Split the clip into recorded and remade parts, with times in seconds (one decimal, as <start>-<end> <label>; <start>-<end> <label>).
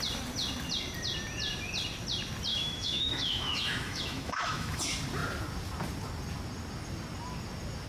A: 0.0-2.5 recorded; 2.5-4.8 remade; 4.8-7.9 recorded